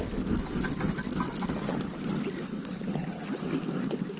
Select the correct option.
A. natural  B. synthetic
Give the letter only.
A